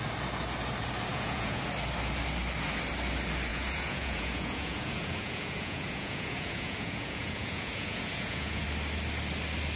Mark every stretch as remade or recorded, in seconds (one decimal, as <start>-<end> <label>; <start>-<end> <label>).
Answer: 0.0-1.1 recorded; 1.1-1.6 remade; 1.6-3.5 recorded; 3.5-8.6 remade; 8.6-9.8 recorded

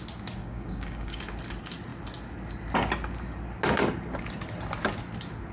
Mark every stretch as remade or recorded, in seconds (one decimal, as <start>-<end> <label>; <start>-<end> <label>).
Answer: 0.0-0.4 recorded; 0.4-1.2 remade; 1.2-5.5 recorded

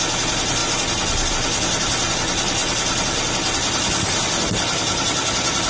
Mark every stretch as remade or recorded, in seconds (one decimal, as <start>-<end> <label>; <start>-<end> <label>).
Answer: 0.0-5.7 recorded